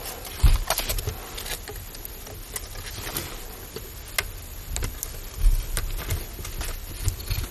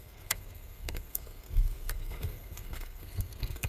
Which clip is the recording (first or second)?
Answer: first